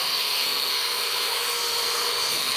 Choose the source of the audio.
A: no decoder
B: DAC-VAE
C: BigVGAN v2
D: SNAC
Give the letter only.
D